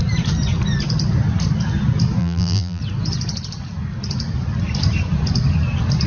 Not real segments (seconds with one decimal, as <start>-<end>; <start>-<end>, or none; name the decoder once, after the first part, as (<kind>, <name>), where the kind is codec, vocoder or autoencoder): 2.2-2.8 (vocoder, BigVGAN v2)